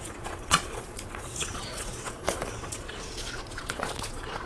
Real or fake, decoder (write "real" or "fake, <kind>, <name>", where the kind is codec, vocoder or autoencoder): fake, vocoder, Vocos